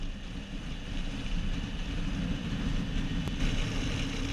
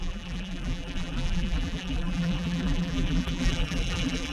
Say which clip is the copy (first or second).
second